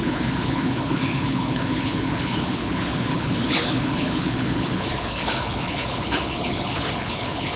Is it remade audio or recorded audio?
remade